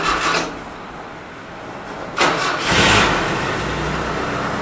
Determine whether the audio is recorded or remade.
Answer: recorded